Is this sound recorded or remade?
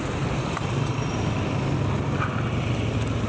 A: recorded